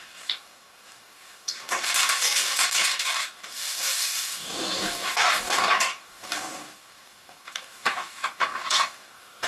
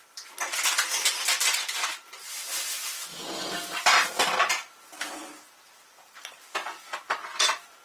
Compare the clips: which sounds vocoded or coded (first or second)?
first